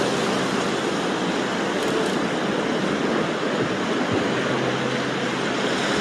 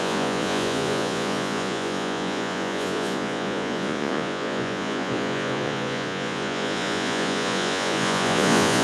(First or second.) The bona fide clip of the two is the first